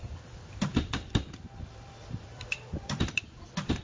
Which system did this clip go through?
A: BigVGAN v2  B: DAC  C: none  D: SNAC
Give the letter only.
C